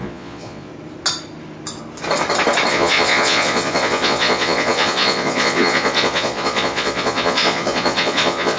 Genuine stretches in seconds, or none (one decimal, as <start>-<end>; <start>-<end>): 0.7-2.7